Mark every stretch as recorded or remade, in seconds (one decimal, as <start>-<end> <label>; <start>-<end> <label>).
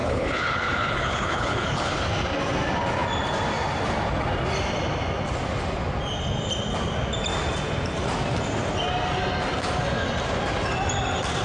0.0-2.0 remade; 2.0-11.4 recorded